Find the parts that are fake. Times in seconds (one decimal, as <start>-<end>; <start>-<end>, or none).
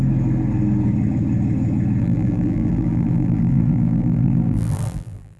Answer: 2.0-5.4